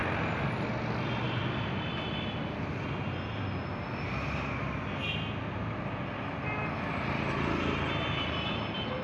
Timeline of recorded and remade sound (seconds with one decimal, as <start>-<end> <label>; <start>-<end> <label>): 0.0-9.0 recorded